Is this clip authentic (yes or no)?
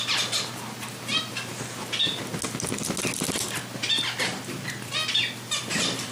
yes